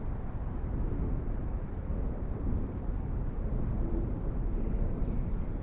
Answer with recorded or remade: recorded